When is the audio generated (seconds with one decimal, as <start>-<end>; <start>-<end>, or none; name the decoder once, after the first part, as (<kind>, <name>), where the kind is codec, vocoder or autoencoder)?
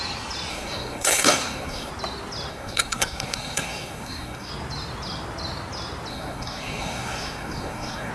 0.5-1.9 (codec, SNAC); 2.5-4.5; 6.1-8.1